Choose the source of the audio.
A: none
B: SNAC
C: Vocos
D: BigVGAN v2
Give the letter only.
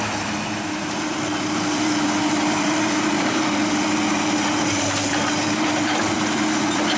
D